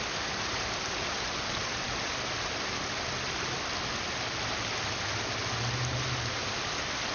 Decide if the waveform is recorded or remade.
recorded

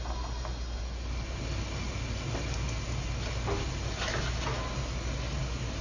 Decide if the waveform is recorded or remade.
recorded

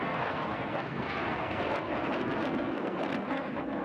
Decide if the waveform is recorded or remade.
remade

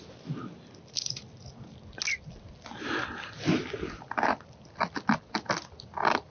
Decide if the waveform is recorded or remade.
recorded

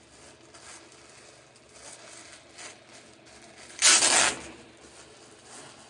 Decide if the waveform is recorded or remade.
recorded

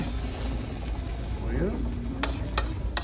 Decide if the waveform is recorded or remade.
recorded